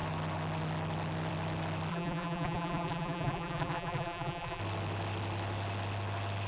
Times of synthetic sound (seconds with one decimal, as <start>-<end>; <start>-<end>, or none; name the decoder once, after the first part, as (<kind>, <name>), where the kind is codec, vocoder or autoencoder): 1.9-4.6 (vocoder, BigVGAN v2)